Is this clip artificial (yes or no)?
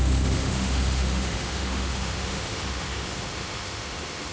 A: yes